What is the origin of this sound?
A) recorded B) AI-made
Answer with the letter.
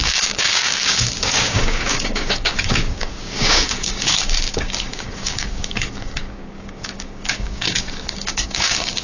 B